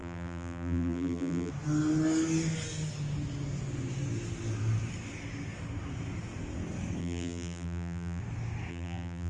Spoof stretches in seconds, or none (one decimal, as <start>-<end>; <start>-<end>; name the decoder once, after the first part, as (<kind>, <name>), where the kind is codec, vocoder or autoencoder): 0.0-1.5 (vocoder, BigVGAN v2); 7.0-8.2; 8.7-9.3